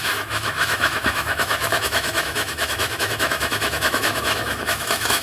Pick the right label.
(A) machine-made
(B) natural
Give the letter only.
A